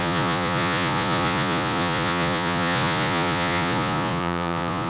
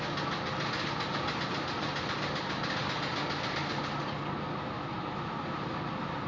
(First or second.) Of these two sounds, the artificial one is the first